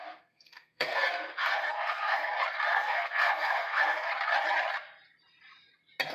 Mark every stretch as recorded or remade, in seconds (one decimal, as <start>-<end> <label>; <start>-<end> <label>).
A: 0.0-2.3 remade; 2.3-2.7 recorded; 2.7-4.1 remade; 4.1-6.1 recorded